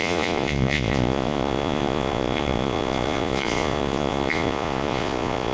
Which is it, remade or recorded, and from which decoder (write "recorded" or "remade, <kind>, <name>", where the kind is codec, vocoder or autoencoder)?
remade, vocoder, Vocos